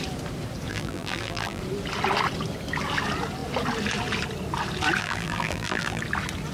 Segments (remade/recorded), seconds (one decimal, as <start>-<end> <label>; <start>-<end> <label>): 0.0-0.7 recorded; 0.7-1.6 remade; 1.6-5.0 recorded; 5.0-6.0 remade; 6.0-6.5 recorded